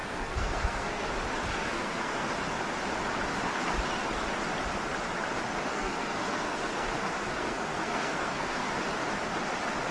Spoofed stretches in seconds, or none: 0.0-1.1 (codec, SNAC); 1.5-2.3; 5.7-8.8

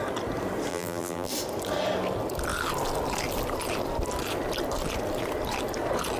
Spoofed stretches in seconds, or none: 0.7-1.3 (vocoder, BigVGAN v2)

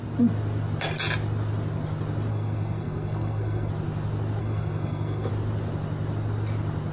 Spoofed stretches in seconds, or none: 2.3-3.7 (codec, SNAC); 4.4-5.3

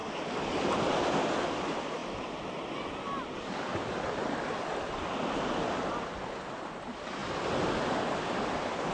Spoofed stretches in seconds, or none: none

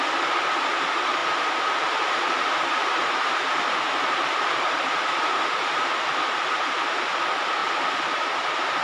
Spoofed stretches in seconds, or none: 1.2-5.9 (vocoder, BigVGAN v2)

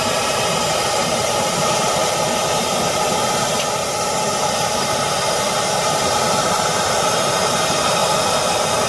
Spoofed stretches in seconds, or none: 0.0-2.0 (vocoder, BigVGAN v2); 2.6-8.0

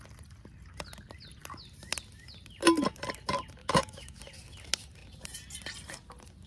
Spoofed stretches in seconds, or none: 3.6-4.2 (autoencoder, DAC-VAE)

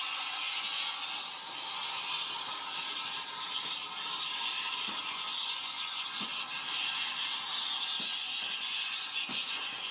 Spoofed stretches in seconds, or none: 0.0-1.0 (vocoder, Vocos); 5.0-6.3; 8.2-9.9